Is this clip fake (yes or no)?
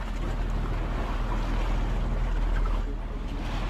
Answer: no